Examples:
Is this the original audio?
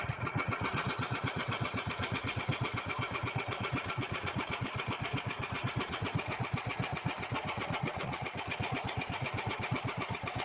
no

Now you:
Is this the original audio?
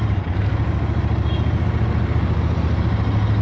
yes